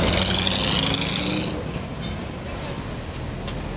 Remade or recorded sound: recorded